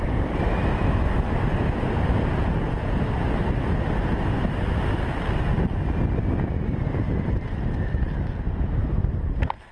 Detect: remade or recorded recorded